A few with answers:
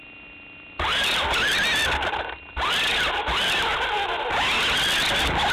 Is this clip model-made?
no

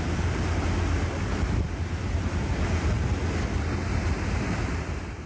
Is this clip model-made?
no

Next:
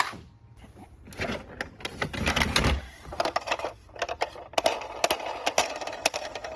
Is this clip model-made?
yes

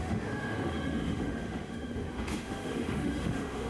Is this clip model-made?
yes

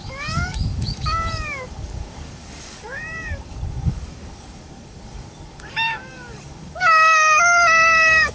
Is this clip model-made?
yes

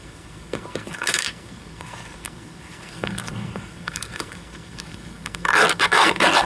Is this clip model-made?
yes